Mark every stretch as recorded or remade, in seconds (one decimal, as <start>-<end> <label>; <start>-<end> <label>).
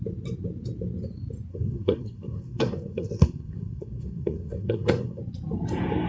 0.0-1.5 recorded; 1.5-5.2 remade; 5.2-6.1 recorded